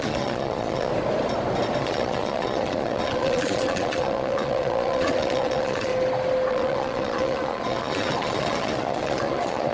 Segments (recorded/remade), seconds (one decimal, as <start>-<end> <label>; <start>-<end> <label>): 0.0-0.9 remade; 0.9-1.8 recorded; 1.8-5.9 remade; 5.9-6.5 recorded; 6.5-9.7 remade